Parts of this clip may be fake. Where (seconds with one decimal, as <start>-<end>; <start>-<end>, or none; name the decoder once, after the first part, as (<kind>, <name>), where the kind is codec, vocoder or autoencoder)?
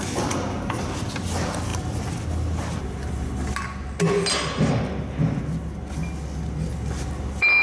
none